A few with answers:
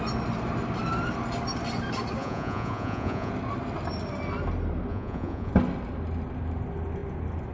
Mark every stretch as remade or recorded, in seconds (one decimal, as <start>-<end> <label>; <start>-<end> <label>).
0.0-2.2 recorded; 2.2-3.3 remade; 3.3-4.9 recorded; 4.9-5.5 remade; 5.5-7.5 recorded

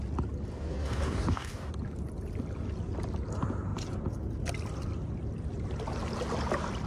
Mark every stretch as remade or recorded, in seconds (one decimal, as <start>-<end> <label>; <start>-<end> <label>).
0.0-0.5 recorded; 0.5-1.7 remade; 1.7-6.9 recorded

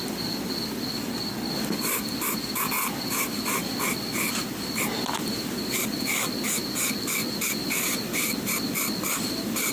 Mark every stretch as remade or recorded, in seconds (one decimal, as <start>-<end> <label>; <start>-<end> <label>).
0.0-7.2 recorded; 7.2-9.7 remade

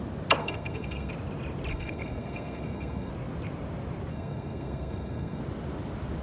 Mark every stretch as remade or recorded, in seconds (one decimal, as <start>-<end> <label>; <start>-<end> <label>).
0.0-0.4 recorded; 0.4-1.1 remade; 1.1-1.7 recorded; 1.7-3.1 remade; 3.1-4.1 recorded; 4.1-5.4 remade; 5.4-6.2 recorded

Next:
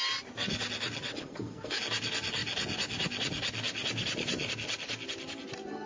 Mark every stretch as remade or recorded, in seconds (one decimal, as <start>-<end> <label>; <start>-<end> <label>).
0.0-1.1 recorded; 1.1-1.8 remade; 1.8-5.9 recorded